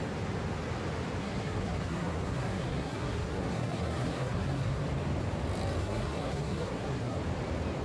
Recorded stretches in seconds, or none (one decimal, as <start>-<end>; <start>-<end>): 0.0-1.2; 4.8-5.8; 7.2-7.8